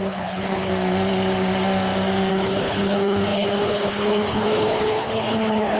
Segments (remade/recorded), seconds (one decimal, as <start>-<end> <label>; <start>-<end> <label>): 0.0-0.7 remade; 0.7-2.3 recorded; 2.3-5.8 remade

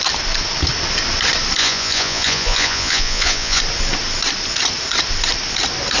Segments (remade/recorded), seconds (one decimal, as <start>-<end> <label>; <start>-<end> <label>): 0.0-1.6 recorded; 1.6-3.6 remade; 3.6-6.0 recorded

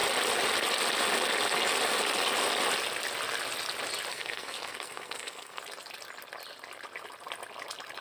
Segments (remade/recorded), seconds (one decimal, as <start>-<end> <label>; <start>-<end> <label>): 0.0-4.1 recorded; 4.1-5.6 remade; 5.6-8.0 recorded

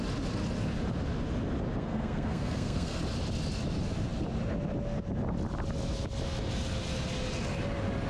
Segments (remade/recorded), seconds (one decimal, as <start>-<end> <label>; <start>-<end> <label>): 0.0-1.8 recorded; 1.8-3.0 remade; 3.0-8.1 recorded

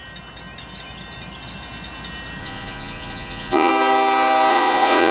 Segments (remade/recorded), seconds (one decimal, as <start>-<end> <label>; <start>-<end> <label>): 0.0-2.4 recorded; 2.4-3.7 remade; 3.7-4.5 recorded; 4.5-5.1 remade

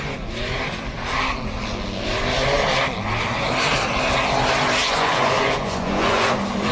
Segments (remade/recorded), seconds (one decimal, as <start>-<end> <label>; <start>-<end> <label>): 0.0-4.8 recorded; 4.8-6.3 remade; 6.3-6.7 recorded